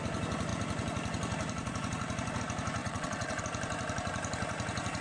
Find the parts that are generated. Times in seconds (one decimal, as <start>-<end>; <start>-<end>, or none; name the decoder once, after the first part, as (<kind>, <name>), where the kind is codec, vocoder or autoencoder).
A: 2.8-3.4 (vocoder, WaveNeXt)